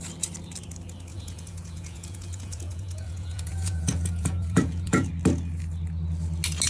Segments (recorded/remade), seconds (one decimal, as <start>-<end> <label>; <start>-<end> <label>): 0.0-1.1 recorded; 1.1-5.1 remade; 5.1-6.7 recorded